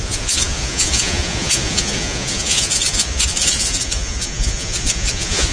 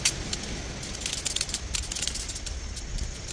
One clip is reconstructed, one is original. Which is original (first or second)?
second